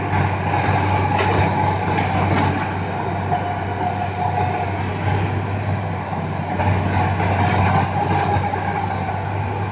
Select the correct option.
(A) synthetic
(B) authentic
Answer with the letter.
B